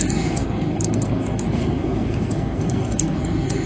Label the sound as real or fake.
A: fake